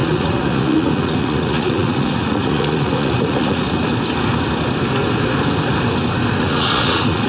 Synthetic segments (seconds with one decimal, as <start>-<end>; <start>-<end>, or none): 0.0-3.9; 6.4-7.3

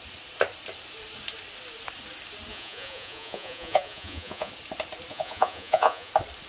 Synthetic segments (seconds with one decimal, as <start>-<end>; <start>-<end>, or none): 2.5-4.5; 5.1-6.1

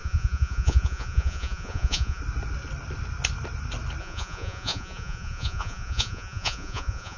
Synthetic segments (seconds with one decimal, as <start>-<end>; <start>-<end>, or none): 0.0-2.2; 4.0-7.2

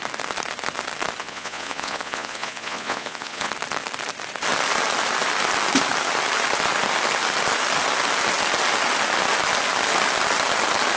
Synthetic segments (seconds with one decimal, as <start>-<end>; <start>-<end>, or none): 1.2-3.5

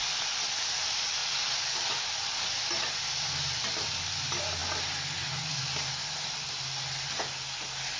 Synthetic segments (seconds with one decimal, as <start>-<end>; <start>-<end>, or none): none

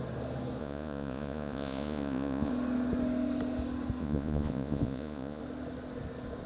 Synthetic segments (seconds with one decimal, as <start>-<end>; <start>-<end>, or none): 0.6-2.5; 4.0-5.4

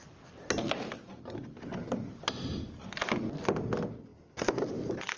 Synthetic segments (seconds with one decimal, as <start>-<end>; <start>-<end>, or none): none

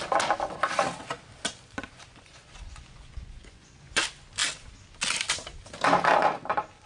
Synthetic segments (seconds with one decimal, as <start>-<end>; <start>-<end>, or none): 2.1-4.0